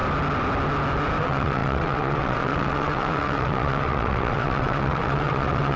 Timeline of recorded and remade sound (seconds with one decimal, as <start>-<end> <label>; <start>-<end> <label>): 0.0-1.2 recorded; 1.2-5.8 remade